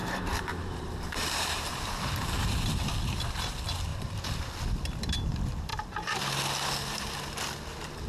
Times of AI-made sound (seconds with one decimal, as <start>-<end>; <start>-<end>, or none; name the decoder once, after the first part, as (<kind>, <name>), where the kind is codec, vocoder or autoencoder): 0.0-2.7 (vocoder, BigVGAN v2); 3.9-4.4